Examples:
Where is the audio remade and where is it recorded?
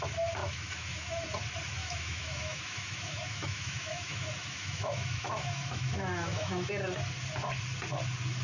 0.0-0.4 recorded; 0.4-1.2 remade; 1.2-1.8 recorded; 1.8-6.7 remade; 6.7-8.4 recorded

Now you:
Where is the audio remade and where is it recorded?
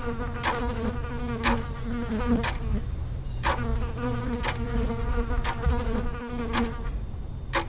0.0-7.7 recorded